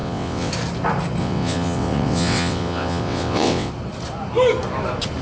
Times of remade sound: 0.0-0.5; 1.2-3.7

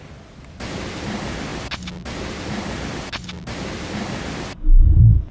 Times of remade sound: none

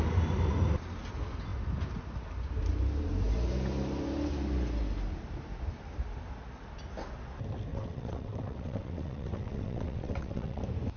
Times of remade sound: 7.7-10.6

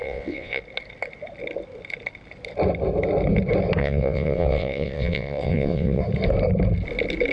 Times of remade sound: 0.0-0.6; 3.8-6.0

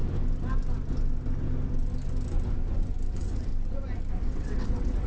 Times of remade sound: 3.1-3.5; 4.1-5.1

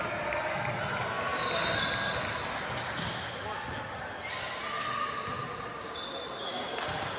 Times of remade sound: none